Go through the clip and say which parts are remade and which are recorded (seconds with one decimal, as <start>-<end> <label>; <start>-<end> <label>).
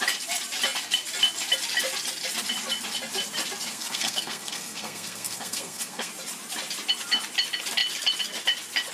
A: 0.0-3.7 recorded; 3.7-6.1 remade; 6.1-8.9 recorded